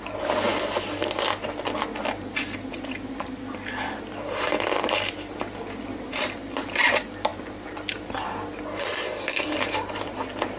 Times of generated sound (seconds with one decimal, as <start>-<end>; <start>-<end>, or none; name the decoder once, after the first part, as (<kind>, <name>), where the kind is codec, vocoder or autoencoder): none